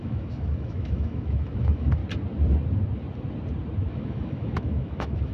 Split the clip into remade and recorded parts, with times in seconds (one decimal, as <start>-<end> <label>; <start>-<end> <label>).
0.0-2.0 remade; 2.0-3.8 recorded; 3.8-5.3 remade